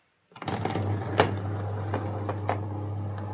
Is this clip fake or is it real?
real